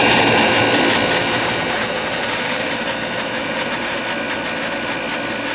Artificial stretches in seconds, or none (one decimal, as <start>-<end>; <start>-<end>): 0.0-0.6; 1.2-4.0